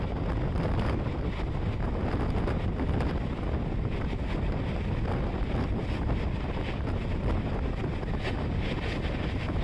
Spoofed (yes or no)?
no